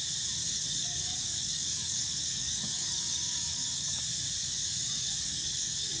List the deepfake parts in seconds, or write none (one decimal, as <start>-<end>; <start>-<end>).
0.4-4.0; 4.4-6.0